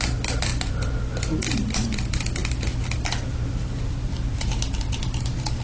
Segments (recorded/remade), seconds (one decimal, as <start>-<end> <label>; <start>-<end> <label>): 0.0-5.6 recorded

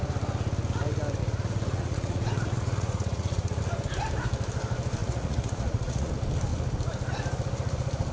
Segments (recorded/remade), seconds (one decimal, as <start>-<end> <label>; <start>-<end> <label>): 0.0-1.2 recorded; 1.2-3.6 remade; 3.6-5.0 recorded; 5.0-6.1 remade; 6.1-8.1 recorded

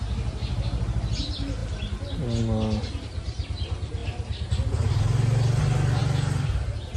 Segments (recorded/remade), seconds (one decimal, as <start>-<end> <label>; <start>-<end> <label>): 0.0-7.0 recorded

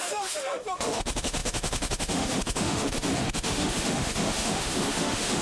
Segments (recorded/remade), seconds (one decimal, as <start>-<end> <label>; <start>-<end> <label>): 0.0-5.4 remade